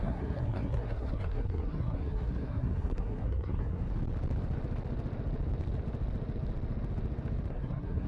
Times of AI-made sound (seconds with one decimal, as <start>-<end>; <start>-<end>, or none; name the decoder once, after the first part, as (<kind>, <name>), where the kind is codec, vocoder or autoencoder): 0.0-3.9 (codec, SNAC); 7.5-8.1